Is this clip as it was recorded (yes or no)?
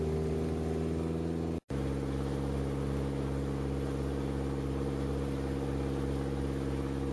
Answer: yes